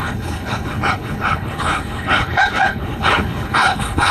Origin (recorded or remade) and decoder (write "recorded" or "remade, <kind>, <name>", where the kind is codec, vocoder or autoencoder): remade, codec, HILCodec